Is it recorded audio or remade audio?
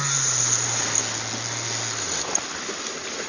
recorded